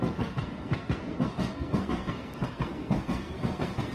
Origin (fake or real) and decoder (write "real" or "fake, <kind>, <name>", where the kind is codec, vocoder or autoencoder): fake, codec, SNAC